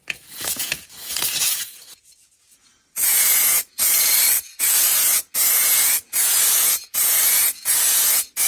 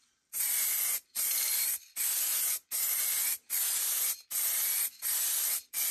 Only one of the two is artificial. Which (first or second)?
first